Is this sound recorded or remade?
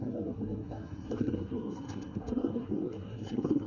remade